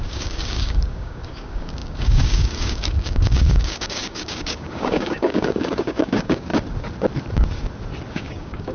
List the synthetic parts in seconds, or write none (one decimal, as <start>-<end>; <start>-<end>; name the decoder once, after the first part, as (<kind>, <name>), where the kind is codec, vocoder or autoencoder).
0.0-6.5 (codec, DAC); 8.1-8.7